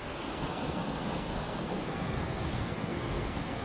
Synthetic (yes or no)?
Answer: yes